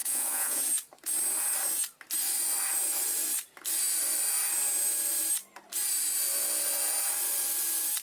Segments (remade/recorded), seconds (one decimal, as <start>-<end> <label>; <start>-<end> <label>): 0.0-0.6 remade; 0.6-8.0 recorded